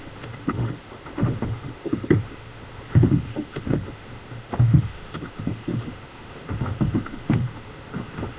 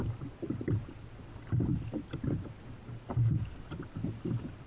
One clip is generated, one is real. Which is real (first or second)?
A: second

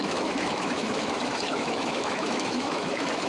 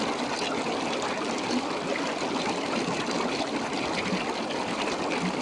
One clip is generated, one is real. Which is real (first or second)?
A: second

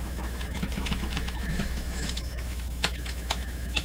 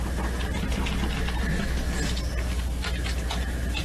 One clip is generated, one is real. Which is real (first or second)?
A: second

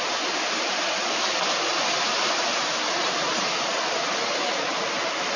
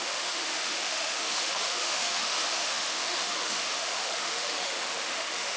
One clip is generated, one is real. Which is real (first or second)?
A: first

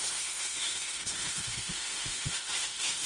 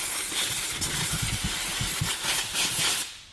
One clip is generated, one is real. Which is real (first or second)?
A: second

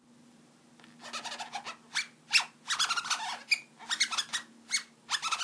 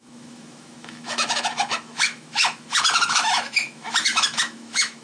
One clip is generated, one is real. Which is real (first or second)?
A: first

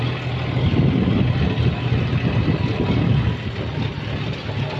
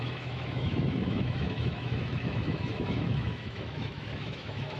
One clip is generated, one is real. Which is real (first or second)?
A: first